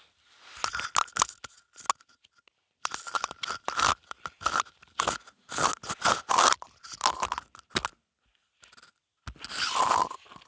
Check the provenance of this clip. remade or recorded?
recorded